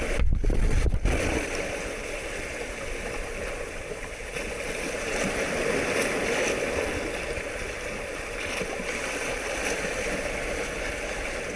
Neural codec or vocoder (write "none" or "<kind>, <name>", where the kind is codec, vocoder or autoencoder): none